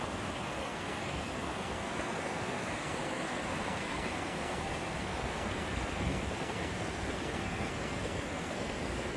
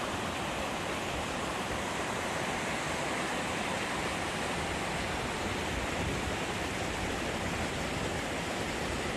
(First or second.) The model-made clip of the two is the first